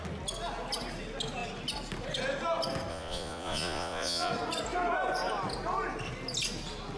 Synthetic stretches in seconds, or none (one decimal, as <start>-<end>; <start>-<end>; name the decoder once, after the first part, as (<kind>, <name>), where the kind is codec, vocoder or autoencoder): 2.9-4.3 (vocoder, Vocos)